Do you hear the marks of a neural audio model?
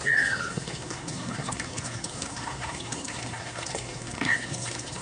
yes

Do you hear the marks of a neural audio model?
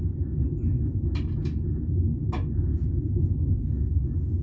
no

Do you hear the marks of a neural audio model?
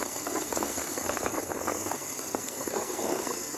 yes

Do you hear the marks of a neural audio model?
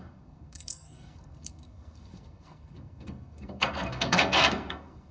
yes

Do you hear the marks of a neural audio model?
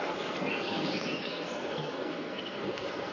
yes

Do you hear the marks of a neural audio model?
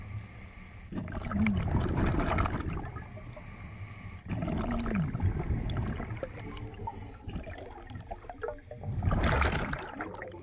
no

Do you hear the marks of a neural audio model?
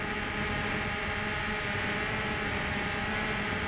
no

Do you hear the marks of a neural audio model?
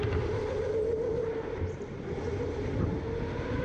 no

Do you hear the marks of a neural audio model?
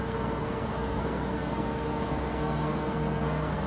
yes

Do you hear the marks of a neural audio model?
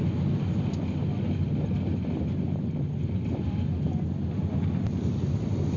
no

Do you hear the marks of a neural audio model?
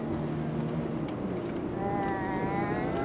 no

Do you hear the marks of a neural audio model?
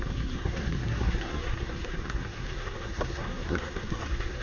yes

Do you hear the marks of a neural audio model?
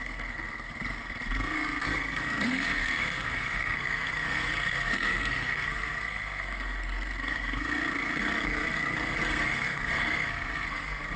yes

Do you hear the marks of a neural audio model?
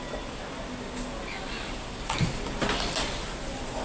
no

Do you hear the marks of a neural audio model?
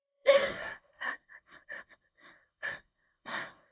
yes